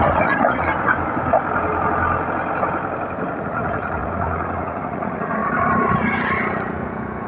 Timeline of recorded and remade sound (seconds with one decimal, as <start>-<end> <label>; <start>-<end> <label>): 0.0-0.7 remade; 0.7-3.3 recorded; 3.3-5.4 remade; 5.4-7.3 recorded